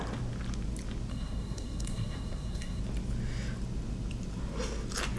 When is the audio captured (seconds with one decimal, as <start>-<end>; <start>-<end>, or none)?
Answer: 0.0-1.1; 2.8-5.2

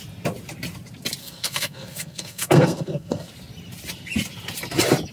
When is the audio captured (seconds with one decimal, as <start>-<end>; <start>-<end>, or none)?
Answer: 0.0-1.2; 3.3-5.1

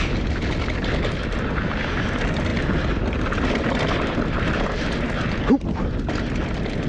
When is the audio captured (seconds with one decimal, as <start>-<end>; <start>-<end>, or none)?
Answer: 0.0-6.9

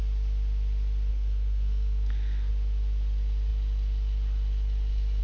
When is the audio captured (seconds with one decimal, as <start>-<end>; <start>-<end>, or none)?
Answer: 0.0-1.1; 2.5-5.2

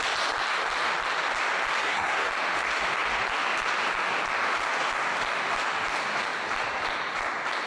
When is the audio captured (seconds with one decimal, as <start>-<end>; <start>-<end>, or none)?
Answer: 0.0-1.8; 2.3-7.7

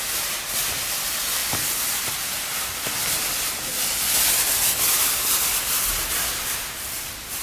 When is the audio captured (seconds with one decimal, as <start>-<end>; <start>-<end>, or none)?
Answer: 0.0-7.4

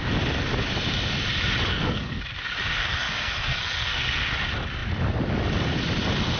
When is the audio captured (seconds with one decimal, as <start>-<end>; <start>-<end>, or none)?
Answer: 0.0-1.7; 2.2-2.7; 4.2-6.4

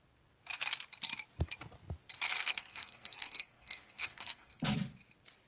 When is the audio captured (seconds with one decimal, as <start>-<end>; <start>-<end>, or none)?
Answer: 0.0-2.3; 4.6-5.5